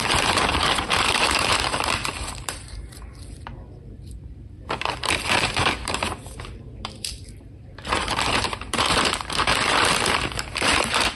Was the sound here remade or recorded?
remade